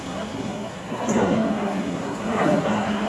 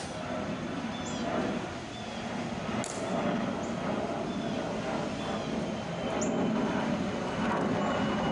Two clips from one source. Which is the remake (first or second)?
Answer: first